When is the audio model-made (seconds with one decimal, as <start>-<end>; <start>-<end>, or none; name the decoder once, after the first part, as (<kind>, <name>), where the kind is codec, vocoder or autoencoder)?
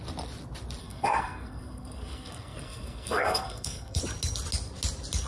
0.8-4.0 (codec, SNAC)